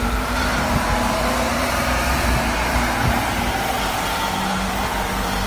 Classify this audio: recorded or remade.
remade